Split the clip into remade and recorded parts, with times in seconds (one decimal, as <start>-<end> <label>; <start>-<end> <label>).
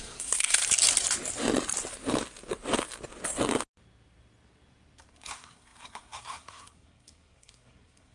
0.0-0.6 remade; 0.6-5.1 recorded; 5.1-8.1 remade